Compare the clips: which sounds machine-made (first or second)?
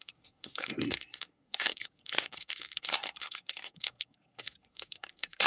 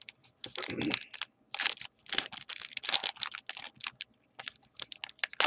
first